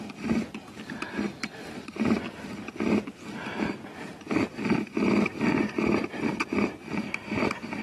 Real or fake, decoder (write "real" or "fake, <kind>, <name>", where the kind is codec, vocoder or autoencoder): real